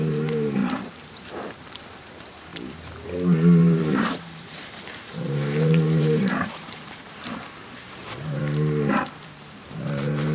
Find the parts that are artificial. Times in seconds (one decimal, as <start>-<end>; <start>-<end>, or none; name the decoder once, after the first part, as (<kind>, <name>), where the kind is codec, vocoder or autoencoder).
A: 0.0-2.5 (vocoder, BigVGAN v2); 3.6-8.4; 8.9-10.3